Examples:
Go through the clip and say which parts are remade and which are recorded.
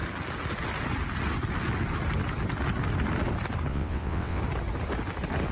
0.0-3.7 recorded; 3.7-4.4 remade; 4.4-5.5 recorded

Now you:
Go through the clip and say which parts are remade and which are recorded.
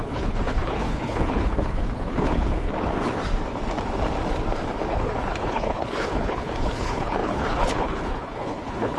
0.0-2.7 remade; 2.7-4.9 recorded; 4.9-9.0 remade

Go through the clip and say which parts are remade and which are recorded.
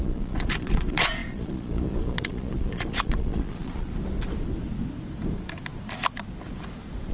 0.0-3.9 remade; 3.9-7.1 recorded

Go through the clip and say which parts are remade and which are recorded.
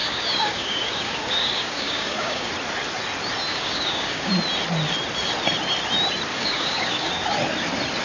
0.0-2.5 remade; 2.5-3.5 recorded; 3.5-4.3 remade; 4.3-6.3 recorded; 6.3-7.1 remade; 7.1-8.0 recorded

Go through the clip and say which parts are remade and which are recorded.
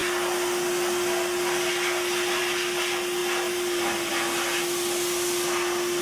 0.0-6.0 recorded